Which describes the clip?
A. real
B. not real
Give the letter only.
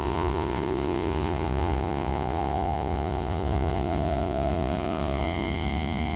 B